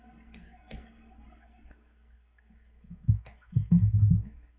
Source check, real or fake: fake